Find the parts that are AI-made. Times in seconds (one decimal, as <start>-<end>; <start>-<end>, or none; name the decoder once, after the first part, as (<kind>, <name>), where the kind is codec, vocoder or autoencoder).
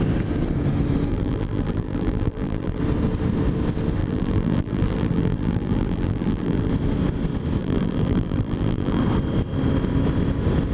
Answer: 1.1-2.8 (vocoder, BigVGAN v2); 4.0-6.7; 7.6-9.0